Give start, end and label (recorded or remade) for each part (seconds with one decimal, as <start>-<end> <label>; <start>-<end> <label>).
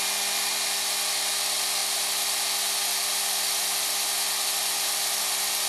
0.0-5.7 recorded